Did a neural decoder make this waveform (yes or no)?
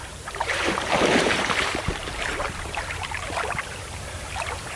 yes